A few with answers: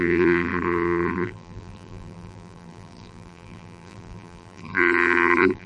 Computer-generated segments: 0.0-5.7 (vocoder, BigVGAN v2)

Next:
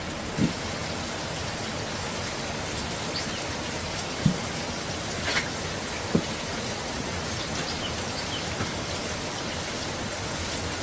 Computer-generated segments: 6.5-7.4 (vocoder, Vocos)